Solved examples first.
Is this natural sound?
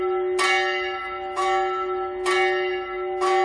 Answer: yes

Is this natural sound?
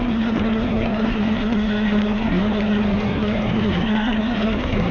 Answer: no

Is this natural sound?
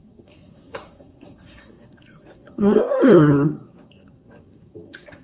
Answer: no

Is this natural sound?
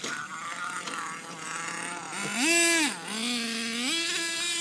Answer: yes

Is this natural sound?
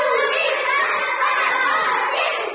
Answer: yes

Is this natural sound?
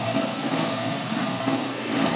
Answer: no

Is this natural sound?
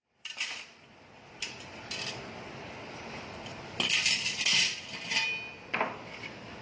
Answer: yes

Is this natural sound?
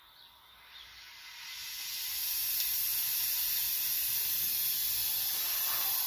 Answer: yes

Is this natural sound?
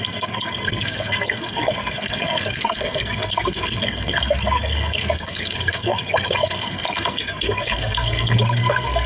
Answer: no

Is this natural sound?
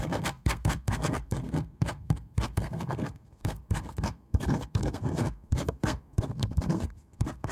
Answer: no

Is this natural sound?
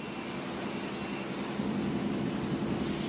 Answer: yes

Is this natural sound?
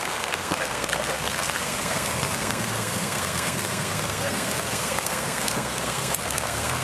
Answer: no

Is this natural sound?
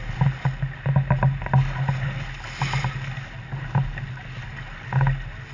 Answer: yes